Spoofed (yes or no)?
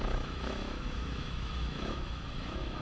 yes